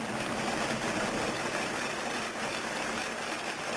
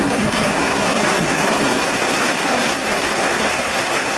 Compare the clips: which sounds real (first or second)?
first